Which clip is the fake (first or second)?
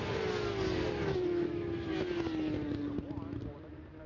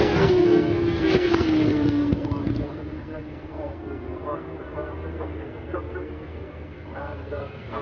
second